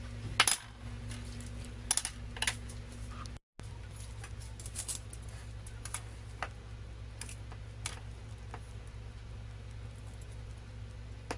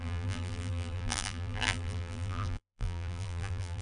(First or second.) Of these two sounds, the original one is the first